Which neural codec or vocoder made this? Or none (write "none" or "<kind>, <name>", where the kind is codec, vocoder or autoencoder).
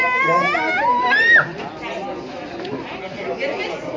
none